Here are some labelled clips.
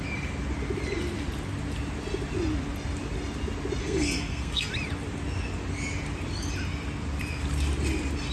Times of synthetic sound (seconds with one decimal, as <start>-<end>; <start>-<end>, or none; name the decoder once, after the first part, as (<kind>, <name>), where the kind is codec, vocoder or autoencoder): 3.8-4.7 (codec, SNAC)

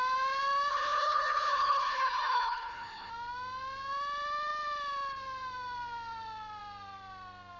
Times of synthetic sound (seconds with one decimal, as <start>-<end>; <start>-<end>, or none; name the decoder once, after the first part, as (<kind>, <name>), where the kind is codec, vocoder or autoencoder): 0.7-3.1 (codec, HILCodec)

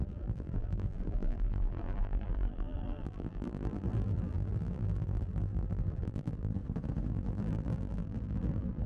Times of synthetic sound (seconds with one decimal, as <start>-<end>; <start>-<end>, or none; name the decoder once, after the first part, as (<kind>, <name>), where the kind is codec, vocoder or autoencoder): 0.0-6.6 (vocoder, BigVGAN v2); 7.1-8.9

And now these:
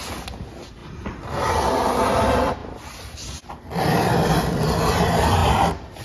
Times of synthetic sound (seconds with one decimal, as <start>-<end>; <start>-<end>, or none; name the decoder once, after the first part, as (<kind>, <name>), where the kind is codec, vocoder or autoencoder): none

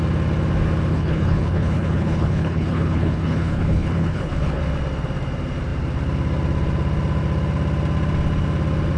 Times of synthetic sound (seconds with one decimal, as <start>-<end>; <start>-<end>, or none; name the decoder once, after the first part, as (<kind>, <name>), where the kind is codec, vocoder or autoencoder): 0.9-4.6 (codec, HILCodec)

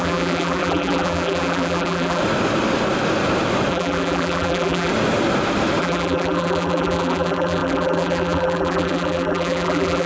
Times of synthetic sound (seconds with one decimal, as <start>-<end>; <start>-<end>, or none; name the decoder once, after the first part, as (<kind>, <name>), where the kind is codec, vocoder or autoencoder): 0.0-2.2 (vocoder, BigVGAN v2); 3.7-4.9; 5.8-10.1

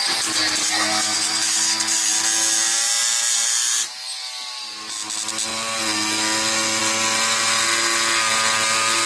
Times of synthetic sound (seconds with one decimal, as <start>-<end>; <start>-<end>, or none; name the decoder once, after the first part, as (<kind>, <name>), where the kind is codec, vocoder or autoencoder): 0.7-2.1 (codec, SNAC)